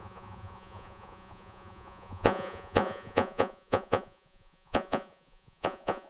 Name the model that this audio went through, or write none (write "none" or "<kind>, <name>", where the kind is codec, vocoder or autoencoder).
vocoder, Vocos